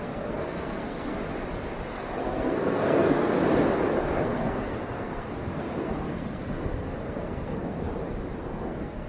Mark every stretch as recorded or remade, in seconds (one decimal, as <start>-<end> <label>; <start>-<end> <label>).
0.0-1.2 remade; 1.2-1.9 recorded; 1.9-3.3 remade; 3.3-4.0 recorded; 4.0-7.9 remade; 7.9-8.4 recorded; 8.4-9.1 remade